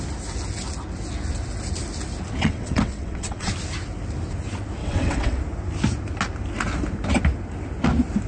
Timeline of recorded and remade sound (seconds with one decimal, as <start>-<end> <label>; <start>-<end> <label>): 0.0-2.4 recorded; 2.4-3.5 remade; 3.5-4.8 recorded; 4.8-5.4 remade; 5.4-8.3 recorded

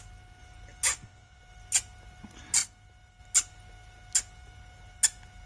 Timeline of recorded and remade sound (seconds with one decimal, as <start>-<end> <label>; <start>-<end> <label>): 0.0-0.9 recorded; 0.9-1.4 remade; 1.4-5.5 recorded